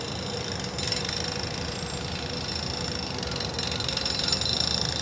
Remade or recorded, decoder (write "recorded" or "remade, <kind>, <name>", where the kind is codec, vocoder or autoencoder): recorded